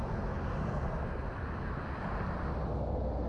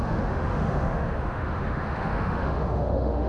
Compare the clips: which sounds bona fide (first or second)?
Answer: first